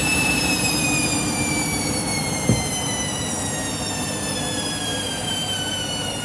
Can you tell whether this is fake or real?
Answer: fake